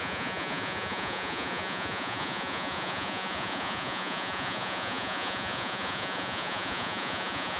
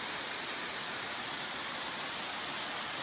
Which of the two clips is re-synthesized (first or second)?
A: first